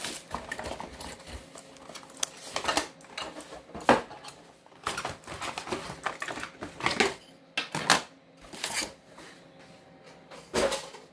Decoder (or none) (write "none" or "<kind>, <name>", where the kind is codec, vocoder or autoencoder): none